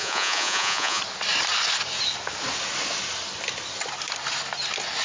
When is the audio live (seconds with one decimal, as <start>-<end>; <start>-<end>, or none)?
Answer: 1.0-5.0